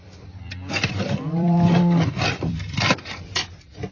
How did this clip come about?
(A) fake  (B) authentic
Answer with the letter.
A